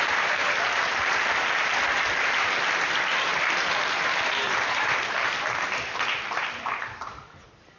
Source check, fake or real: fake